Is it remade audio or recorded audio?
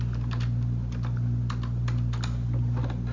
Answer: recorded